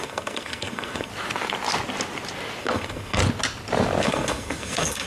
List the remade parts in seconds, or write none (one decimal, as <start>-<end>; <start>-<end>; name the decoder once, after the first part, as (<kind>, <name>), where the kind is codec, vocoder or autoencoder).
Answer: 0.0-1.1 (codec, SNAC); 2.6-3.2; 4.0-5.1